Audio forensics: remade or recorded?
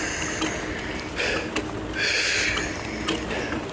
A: recorded